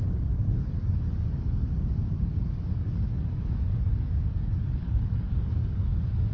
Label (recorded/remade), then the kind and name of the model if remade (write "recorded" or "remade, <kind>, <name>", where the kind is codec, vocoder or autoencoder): remade, codec, DAC